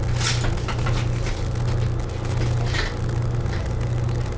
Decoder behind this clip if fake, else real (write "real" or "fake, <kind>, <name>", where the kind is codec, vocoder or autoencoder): real